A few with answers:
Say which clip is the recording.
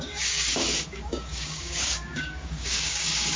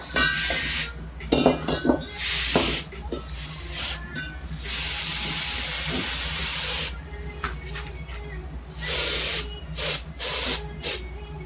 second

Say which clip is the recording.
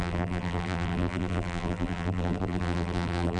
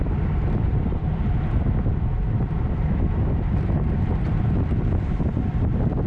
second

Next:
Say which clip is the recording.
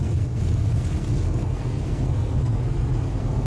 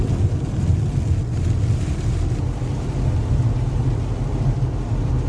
second